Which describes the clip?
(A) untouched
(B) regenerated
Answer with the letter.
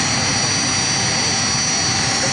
A